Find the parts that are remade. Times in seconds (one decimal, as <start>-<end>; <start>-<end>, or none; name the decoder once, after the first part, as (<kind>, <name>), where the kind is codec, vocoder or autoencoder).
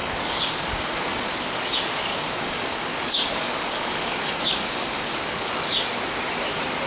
0.0-1.3 (codec, DAC); 2.1-5.6